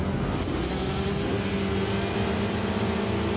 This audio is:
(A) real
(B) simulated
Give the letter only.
A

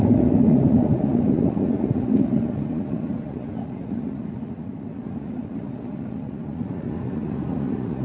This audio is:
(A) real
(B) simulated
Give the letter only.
B